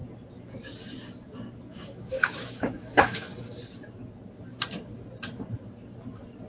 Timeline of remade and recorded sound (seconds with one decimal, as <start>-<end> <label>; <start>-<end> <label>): 0.0-1.6 recorded; 1.6-3.3 remade; 3.3-6.5 recorded